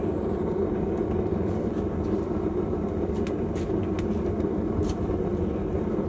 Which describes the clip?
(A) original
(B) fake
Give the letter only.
A